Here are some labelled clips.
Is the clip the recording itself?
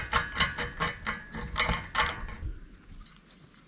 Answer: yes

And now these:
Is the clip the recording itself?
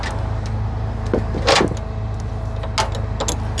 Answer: yes